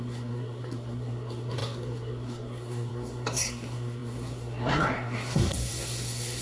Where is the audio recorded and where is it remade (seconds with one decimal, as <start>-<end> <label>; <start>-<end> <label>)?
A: 0.0-6.4 remade